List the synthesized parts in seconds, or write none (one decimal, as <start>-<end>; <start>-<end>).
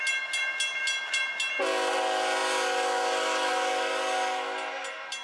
none